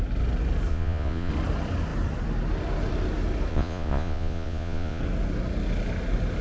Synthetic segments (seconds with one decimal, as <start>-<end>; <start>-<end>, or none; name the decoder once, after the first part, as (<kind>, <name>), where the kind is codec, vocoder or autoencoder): 0.7-1.3 (vocoder, Vocos); 3.5-5.0